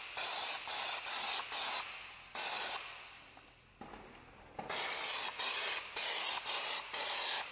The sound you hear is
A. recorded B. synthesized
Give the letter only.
A